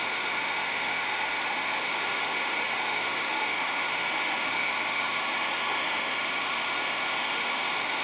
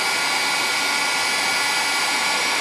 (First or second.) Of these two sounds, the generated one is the first